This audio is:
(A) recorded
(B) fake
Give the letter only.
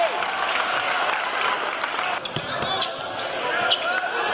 A